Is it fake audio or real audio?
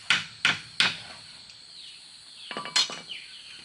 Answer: real